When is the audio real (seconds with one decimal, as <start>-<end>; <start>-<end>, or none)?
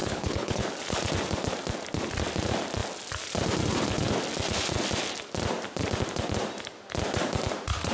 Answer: 0.6-7.9